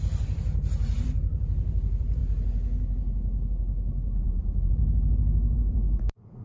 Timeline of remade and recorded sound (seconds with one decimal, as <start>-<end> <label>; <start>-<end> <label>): 0.0-6.4 remade